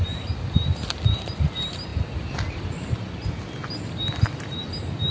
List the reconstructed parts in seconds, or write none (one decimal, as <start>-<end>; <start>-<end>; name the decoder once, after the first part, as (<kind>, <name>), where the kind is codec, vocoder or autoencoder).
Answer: none